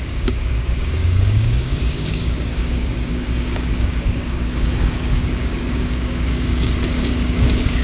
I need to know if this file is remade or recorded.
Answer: remade